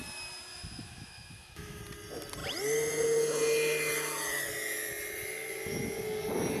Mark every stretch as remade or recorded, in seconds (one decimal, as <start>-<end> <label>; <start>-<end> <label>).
0.0-0.5 recorded; 0.5-1.8 remade; 1.8-6.6 recorded